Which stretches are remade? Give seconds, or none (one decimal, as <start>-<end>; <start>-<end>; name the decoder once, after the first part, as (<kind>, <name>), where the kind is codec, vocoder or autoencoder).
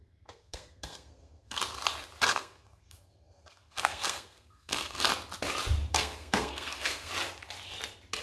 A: 0.0-1.6 (codec, SNAC); 2.3-5.1; 5.9-7.1